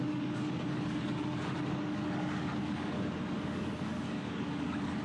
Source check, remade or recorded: remade